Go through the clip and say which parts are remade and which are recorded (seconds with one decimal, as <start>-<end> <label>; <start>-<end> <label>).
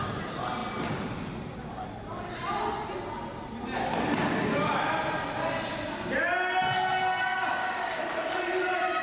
0.0-7.3 recorded; 7.3-8.0 remade; 8.0-9.0 recorded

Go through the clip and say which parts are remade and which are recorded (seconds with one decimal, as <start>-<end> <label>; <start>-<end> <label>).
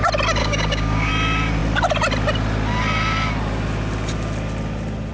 0.0-0.4 recorded; 0.4-1.1 remade; 1.1-5.1 recorded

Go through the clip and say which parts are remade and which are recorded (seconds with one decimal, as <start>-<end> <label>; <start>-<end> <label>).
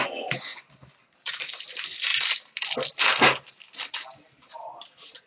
0.0-5.3 recorded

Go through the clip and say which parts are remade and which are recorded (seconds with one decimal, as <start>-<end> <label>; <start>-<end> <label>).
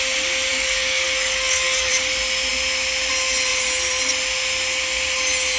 0.0-0.5 recorded; 0.5-1.9 remade; 1.9-5.6 recorded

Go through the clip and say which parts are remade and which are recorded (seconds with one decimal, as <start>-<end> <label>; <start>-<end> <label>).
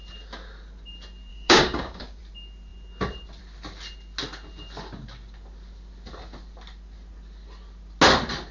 0.0-1.3 recorded; 1.3-2.2 remade; 2.2-8.5 recorded